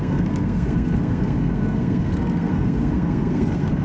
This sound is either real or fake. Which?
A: fake